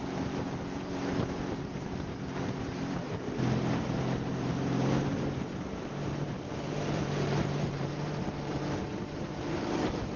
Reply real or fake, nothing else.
fake